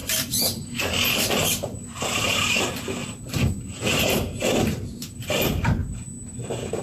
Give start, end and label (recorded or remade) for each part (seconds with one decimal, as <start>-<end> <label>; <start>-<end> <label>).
0.0-2.6 remade; 2.6-3.0 recorded; 3.0-4.0 remade; 4.0-6.8 recorded